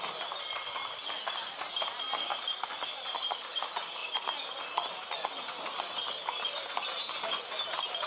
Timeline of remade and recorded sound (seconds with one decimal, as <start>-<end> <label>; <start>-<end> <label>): 0.0-8.1 recorded